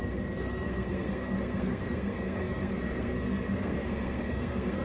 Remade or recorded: remade